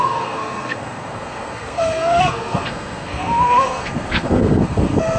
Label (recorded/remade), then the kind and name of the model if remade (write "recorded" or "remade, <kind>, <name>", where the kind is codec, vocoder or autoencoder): remade, codec, SNAC